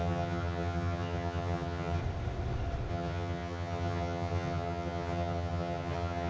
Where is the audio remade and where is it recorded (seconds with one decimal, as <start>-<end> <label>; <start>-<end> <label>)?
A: 0.0-2.0 remade; 2.0-2.9 recorded; 2.9-6.3 remade